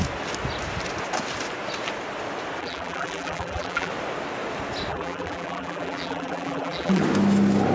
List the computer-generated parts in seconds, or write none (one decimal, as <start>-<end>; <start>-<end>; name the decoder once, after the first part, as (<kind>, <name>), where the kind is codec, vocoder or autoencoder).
2.6-3.9 (vocoder, BigVGAN v2); 4.9-7.0